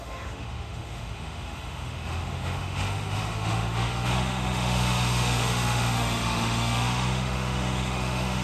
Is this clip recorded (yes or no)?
no